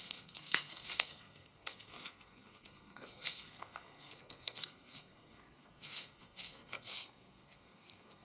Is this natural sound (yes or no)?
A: no